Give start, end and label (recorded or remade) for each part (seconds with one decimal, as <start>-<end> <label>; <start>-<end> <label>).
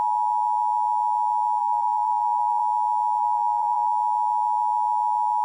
0.0-1.6 recorded; 1.6-2.6 remade; 2.6-3.2 recorded; 3.2-3.9 remade; 3.9-5.4 recorded